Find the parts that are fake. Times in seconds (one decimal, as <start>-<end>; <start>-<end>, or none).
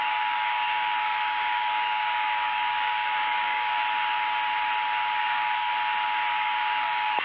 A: 0.0-3.8; 5.2-5.7; 6.3-7.2